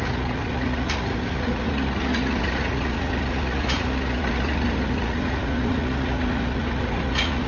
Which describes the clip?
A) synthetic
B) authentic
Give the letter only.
A